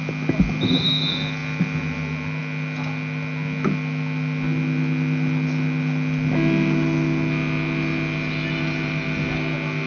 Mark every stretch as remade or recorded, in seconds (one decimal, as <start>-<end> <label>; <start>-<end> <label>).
0.0-9.9 recorded